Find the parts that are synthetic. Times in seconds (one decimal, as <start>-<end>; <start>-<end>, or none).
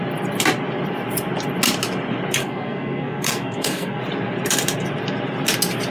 2.4-4.0